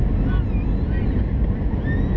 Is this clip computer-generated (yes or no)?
no